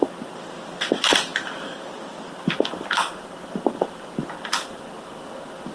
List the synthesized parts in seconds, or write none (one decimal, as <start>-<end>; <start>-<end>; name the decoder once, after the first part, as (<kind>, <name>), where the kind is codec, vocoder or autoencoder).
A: none